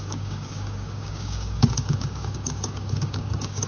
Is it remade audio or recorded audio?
remade